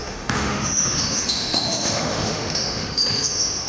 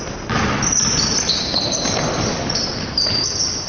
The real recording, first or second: second